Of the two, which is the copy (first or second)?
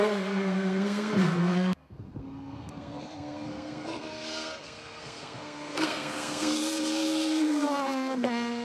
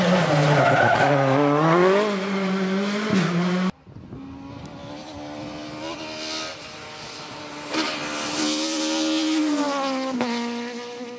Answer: first